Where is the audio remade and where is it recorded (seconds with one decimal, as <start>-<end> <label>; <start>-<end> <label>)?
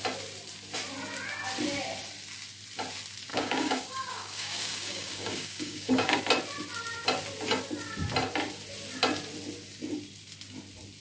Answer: 0.0-3.3 recorded; 3.3-6.2 remade; 6.2-11.0 recorded